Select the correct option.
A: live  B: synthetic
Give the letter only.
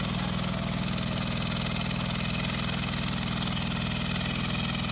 A